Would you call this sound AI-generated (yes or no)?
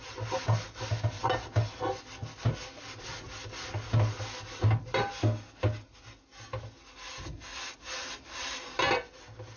no